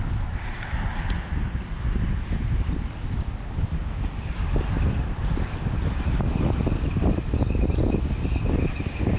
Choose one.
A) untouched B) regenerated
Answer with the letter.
A